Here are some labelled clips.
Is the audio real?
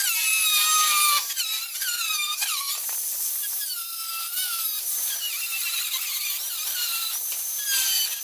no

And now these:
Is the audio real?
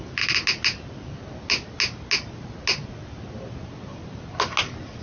yes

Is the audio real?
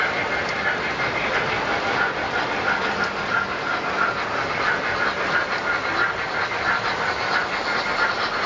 yes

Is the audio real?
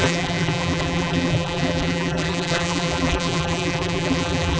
no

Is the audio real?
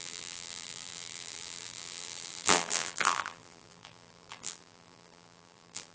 no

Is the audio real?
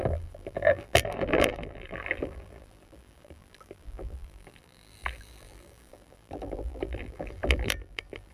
no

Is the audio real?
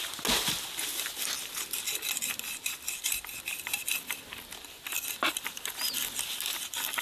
yes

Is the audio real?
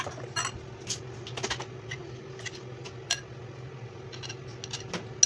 yes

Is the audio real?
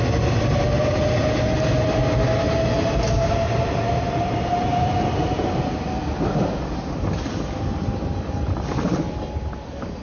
yes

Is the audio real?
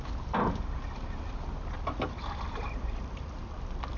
no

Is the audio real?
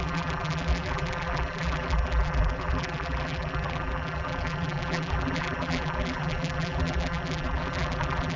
no